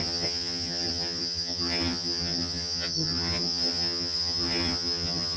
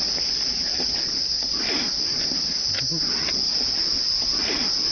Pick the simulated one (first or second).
first